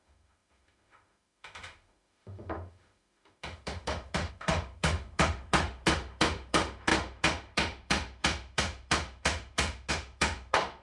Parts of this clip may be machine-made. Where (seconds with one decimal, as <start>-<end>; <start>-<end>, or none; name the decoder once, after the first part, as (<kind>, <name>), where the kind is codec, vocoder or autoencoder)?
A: 0.0-10.8 (autoencoder, DAC-VAE)